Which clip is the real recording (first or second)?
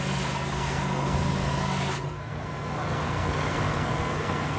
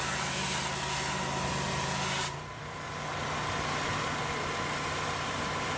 second